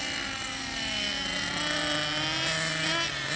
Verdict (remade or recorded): recorded